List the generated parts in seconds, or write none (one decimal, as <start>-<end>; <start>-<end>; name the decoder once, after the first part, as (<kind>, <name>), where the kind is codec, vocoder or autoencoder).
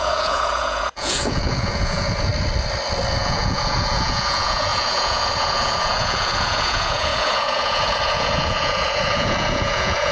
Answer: 0.0-2.3 (vocoder, Vocos); 3.1-10.1